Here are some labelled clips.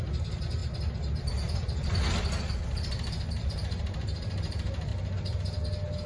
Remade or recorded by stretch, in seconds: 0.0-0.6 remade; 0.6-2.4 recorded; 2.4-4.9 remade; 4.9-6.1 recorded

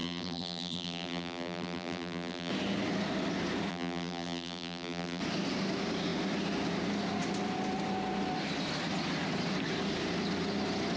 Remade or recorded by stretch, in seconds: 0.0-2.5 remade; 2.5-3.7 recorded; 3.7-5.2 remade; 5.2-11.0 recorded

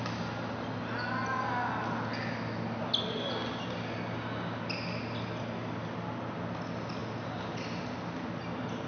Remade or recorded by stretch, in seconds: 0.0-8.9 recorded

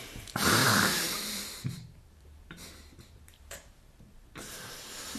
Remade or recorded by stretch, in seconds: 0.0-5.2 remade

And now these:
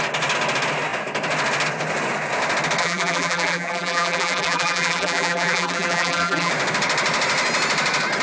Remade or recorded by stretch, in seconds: 0.0-2.8 recorded; 2.8-6.5 remade; 6.5-8.2 recorded

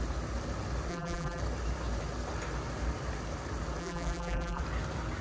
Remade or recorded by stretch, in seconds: 0.0-0.9 recorded; 0.9-1.4 remade; 1.4-3.8 recorded; 3.8-4.6 remade; 4.6-5.2 recorded